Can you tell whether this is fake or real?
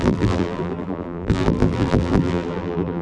fake